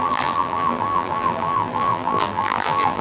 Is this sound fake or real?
fake